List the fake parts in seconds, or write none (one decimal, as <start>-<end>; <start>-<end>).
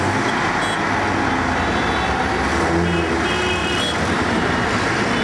3.6-4.5